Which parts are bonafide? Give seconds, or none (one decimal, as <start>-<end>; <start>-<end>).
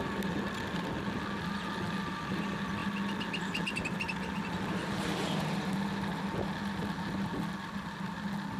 0.0-8.6